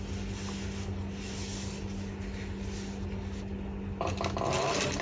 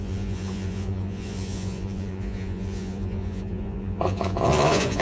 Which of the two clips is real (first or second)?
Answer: first